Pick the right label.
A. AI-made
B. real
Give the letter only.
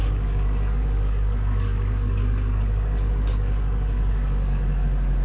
A